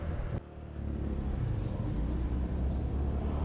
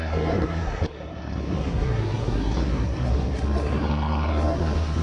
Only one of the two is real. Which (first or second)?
first